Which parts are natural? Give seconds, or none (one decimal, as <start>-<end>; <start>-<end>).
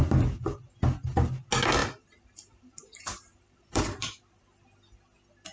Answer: 0.0-1.8; 4.4-5.5